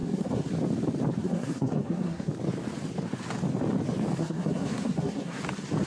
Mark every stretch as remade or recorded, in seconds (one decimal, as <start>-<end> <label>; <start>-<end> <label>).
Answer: 0.0-0.5 remade; 0.5-1.2 recorded; 1.2-2.3 remade; 2.3-4.2 recorded; 4.2-5.4 remade; 5.4-5.9 recorded